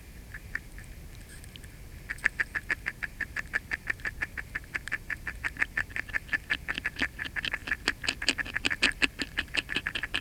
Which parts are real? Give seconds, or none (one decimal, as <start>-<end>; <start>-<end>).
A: 0.0-10.2